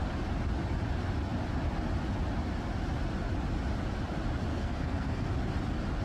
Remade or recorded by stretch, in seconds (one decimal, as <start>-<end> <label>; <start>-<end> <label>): 0.0-4.5 recorded; 4.5-5.3 remade; 5.3-6.0 recorded